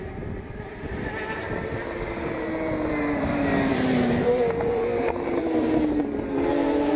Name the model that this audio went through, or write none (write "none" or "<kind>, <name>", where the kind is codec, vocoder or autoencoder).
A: vocoder, BigVGAN v2